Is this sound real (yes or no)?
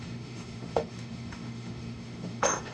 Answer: no